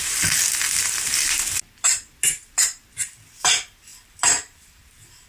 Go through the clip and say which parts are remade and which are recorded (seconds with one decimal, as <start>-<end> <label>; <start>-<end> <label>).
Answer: 0.0-3.9 recorded; 3.9-5.3 remade